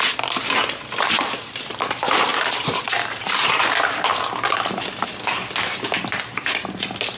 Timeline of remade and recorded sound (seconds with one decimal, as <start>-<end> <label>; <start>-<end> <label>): 0.0-2.3 recorded; 2.3-3.5 remade; 3.5-7.2 recorded